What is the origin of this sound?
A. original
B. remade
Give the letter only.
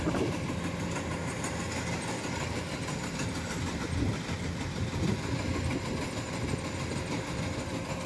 A